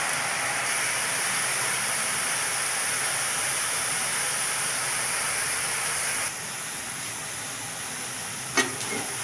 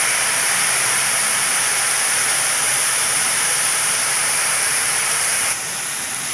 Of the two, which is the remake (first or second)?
second